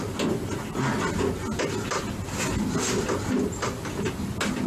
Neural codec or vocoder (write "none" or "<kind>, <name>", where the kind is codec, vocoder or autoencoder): none